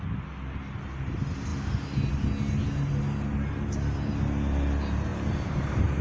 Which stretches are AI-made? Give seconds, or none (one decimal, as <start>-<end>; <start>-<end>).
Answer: 5.1-6.0